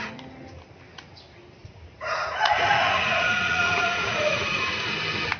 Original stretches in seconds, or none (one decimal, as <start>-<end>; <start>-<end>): 0.0-1.6; 4.8-5.4